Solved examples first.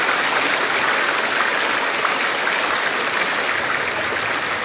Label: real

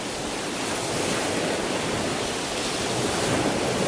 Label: real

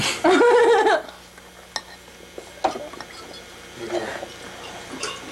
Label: real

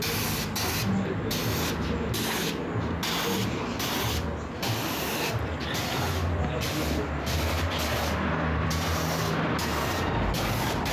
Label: real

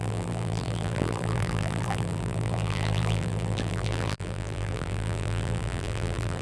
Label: fake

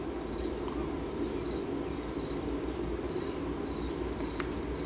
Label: real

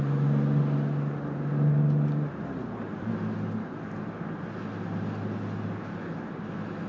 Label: real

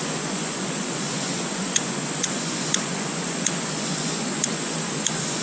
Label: fake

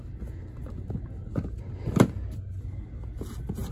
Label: real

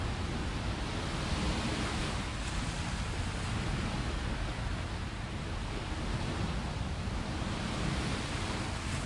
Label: real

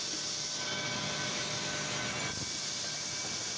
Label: real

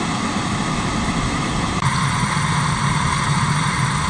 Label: real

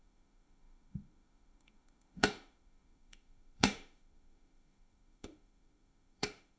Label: fake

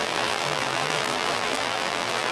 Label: fake